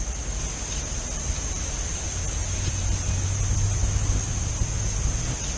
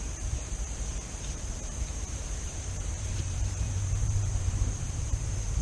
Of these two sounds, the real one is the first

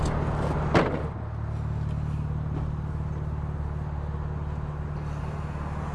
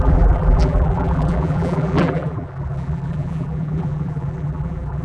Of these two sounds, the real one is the first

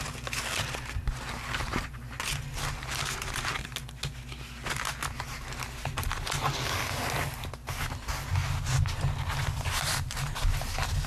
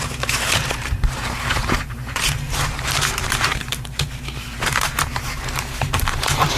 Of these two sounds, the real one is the first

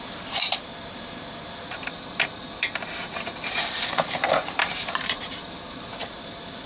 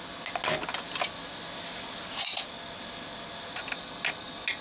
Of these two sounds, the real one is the second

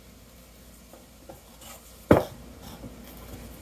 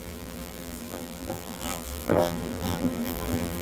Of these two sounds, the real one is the first